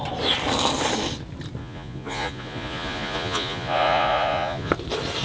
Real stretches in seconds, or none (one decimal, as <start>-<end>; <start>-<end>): 0.0-1.6; 4.7-5.2